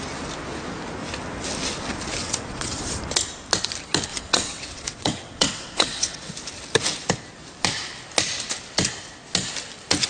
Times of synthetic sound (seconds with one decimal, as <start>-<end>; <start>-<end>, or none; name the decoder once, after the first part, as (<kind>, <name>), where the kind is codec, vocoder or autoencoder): 2.2-2.8 (vocoder, WaveNeXt); 4.1-6.3